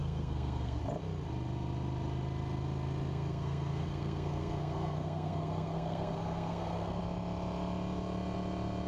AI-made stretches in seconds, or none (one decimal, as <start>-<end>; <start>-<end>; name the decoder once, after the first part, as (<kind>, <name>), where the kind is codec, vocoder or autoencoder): 0.0-0.8 (codec, SNAC); 3.1-7.0